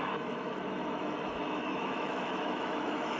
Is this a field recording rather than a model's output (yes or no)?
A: no